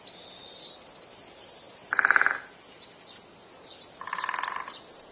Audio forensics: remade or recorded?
recorded